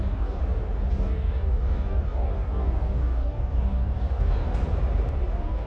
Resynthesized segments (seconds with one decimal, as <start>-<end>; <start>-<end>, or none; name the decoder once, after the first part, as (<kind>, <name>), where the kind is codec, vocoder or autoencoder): 0.0-0.4 (codec, DAC); 0.9-4.6; 5.3-5.7